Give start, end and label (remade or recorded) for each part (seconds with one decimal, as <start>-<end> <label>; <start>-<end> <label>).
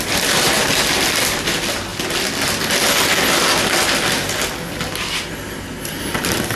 0.0-1.9 remade; 1.9-5.9 recorded; 5.9-6.6 remade